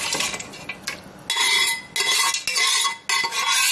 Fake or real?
real